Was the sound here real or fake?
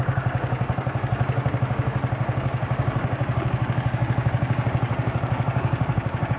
fake